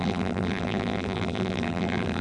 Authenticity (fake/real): fake